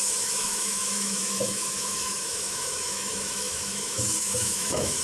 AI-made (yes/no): yes